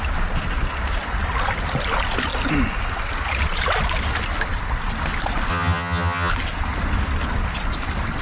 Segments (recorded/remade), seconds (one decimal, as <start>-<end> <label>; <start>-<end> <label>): 0.0-5.5 recorded; 5.5-6.3 remade; 6.3-8.2 recorded